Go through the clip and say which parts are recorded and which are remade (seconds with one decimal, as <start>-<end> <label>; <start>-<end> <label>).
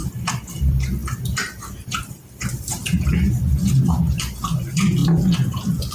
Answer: 0.0-2.8 remade; 2.8-4.6 recorded; 4.6-5.0 remade; 5.0-5.9 recorded